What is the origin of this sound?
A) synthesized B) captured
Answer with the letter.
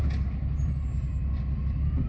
B